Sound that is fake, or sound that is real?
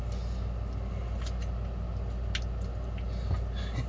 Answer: real